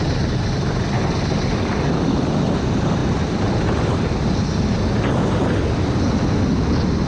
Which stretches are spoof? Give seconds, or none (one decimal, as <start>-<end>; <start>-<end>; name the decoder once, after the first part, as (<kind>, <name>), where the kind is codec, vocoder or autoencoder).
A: none